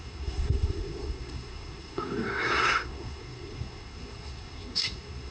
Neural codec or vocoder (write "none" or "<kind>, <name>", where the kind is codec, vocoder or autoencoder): codec, SNAC